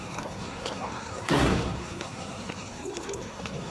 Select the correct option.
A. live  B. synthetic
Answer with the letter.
B